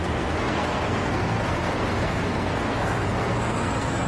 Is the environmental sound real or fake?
fake